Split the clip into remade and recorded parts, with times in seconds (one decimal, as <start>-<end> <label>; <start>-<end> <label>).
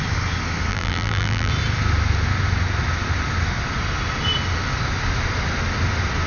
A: 0.0-0.7 recorded; 0.7-1.5 remade; 1.5-6.3 recorded